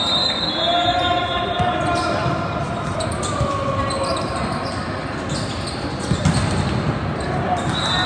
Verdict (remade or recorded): recorded